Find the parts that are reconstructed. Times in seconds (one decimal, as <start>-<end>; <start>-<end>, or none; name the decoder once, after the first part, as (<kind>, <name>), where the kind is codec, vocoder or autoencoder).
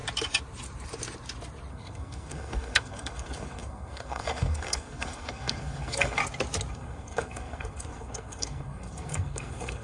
1.7-6.2 (codec, SNAC); 6.7-9.8